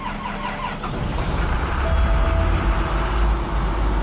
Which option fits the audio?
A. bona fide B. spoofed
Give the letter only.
A